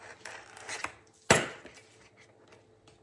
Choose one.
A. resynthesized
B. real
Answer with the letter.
B